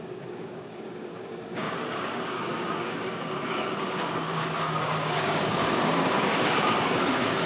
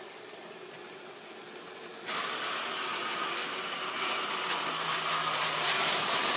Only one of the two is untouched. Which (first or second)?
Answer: second